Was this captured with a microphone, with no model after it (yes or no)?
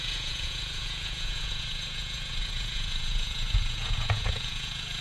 no